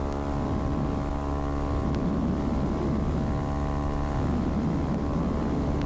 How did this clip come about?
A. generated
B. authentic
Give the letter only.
B